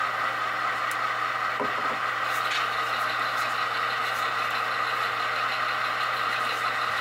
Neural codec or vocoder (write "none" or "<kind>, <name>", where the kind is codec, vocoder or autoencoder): none